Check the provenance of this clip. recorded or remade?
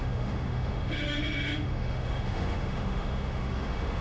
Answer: remade